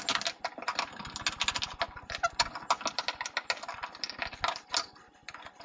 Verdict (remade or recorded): recorded